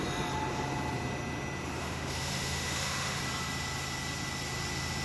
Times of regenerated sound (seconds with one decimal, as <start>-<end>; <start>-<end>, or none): 1.8-3.2